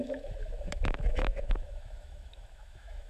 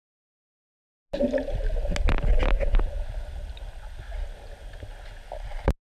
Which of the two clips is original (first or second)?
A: second